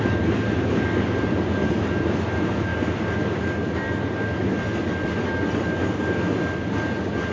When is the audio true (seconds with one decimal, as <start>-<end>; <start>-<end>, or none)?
0.0-7.3

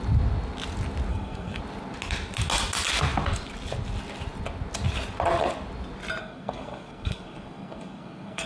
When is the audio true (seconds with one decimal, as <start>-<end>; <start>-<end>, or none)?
0.0-1.1; 1.6-6.2

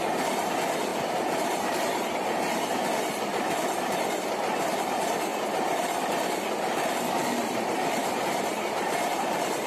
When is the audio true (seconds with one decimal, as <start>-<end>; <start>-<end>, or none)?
0.0-9.7

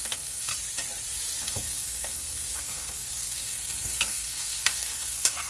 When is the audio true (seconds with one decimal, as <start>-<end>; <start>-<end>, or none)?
0.5-1.4

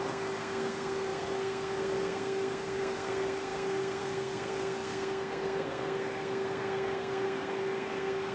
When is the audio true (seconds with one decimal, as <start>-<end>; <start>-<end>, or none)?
none

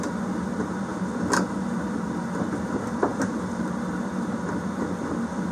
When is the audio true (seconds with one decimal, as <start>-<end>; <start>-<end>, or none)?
0.0-3.1; 3.7-5.5

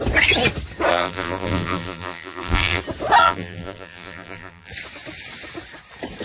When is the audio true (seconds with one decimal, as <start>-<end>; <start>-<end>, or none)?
0.0-0.9; 2.8-3.2; 4.7-6.2

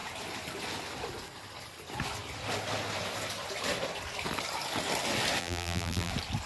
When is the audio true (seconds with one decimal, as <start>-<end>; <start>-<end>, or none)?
0.0-5.4; 6.1-6.5